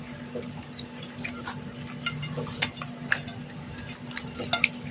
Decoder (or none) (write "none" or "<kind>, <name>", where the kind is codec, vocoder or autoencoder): none